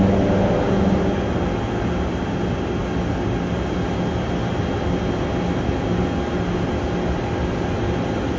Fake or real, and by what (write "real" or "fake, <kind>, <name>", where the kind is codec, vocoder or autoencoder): real